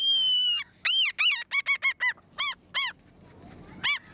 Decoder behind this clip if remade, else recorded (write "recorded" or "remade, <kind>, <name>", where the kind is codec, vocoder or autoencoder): recorded